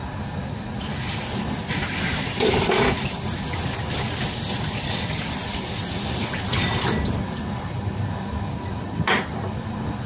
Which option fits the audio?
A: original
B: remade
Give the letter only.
A